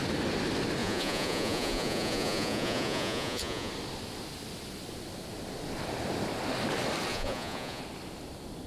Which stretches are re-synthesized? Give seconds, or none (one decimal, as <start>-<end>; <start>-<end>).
0.8-3.7; 7.1-7.8